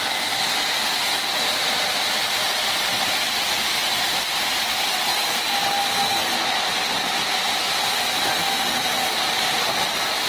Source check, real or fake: real